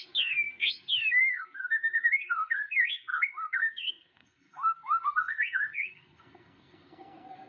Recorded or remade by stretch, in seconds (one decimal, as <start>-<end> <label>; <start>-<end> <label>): 0.0-7.5 remade